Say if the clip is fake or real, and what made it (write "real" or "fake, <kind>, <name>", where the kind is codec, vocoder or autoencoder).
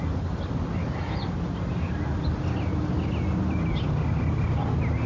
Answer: real